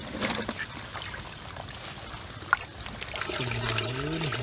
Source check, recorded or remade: recorded